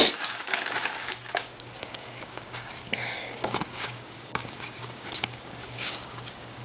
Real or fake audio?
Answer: fake